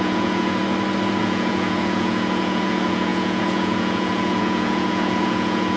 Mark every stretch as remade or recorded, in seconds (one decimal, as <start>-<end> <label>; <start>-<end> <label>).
0.0-0.6 remade; 0.6-1.2 recorded; 1.2-5.8 remade